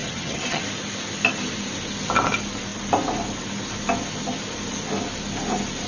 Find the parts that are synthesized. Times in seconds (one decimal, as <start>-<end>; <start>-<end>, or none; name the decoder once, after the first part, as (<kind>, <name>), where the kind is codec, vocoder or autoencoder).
0.0-0.6 (vocoder, HiFi-GAN)